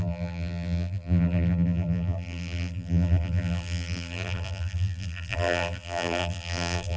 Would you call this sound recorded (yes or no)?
no